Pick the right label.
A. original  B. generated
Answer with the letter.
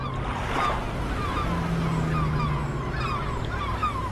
A